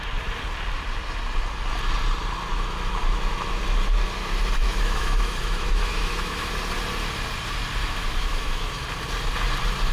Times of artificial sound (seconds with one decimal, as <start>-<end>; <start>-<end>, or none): 2.5-3.6; 4.6-6.5; 7.8-8.8